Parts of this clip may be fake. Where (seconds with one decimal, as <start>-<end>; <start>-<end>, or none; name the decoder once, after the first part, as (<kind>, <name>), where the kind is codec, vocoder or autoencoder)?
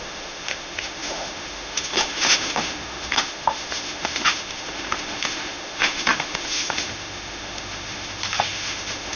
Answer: 0.0-9.2 (autoencoder, DAC-VAE)